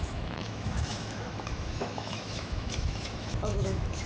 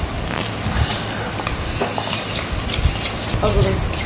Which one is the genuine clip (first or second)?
second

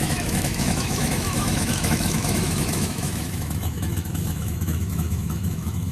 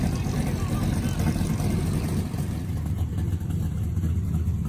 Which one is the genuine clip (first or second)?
second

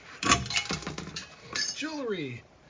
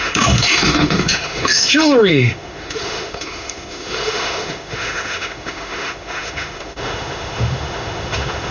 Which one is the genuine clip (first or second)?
first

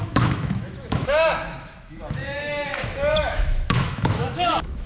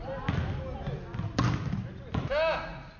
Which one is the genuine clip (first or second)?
second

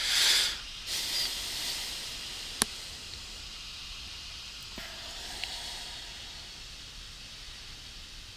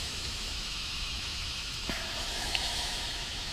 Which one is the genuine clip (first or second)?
first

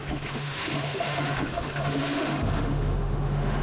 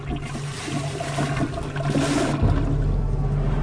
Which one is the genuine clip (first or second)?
second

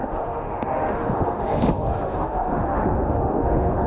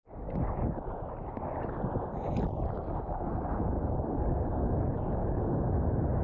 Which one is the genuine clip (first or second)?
second